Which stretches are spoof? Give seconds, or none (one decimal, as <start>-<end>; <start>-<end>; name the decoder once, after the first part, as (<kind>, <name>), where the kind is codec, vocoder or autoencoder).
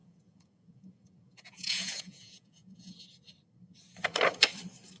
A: 0.0-3.0 (vocoder, Vocos)